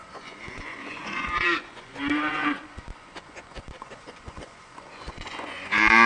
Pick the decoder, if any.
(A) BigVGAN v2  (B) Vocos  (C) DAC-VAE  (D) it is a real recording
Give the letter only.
B